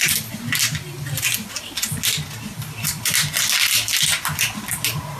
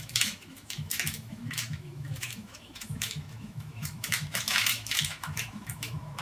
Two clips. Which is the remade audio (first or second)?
second